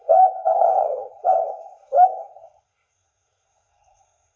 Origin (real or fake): fake